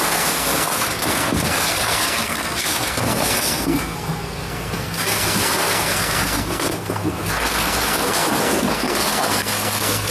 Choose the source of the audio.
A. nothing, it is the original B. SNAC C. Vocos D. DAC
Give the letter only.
B